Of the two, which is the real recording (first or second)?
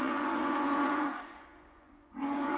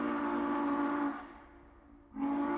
second